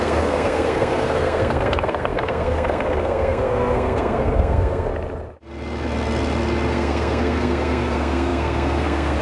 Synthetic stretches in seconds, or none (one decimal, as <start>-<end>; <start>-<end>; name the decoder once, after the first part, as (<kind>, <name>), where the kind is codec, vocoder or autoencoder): 0.0-4.9 (codec, SNAC); 6.7-9.2